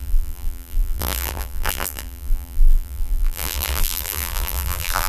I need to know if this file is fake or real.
fake